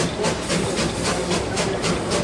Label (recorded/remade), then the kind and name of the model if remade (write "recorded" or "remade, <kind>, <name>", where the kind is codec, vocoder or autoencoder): recorded